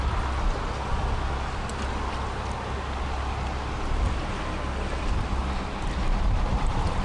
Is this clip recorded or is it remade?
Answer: recorded